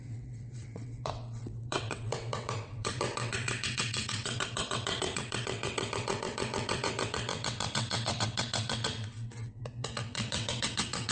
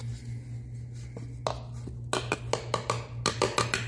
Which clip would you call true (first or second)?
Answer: second